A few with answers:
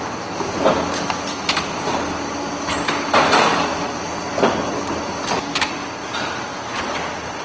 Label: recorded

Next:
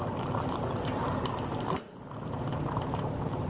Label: remade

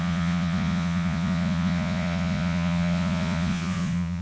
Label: remade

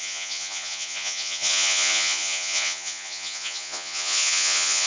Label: remade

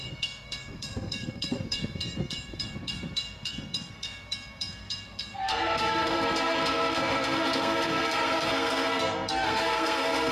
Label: remade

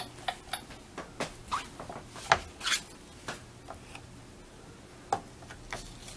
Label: recorded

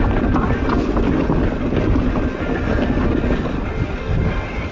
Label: recorded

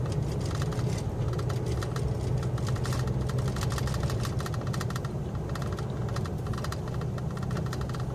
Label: recorded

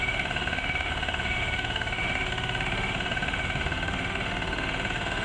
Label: remade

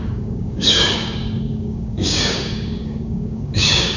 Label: remade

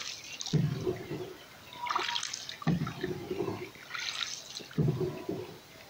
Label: recorded